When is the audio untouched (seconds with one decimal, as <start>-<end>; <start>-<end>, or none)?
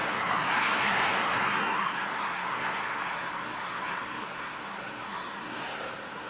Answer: none